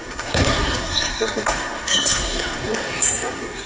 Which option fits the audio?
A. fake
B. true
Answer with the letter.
A